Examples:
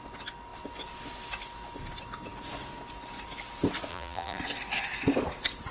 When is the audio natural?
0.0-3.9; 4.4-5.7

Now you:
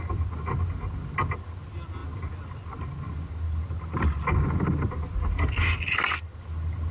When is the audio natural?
0.0-6.9

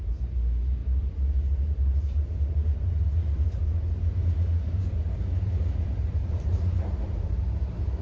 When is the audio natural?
0.0-0.8; 5.2-6.2; 7.6-8.0

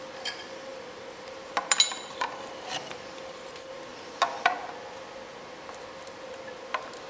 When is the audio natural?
3.9-7.1